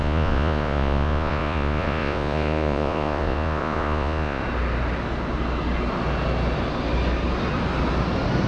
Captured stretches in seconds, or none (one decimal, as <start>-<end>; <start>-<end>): 4.4-8.5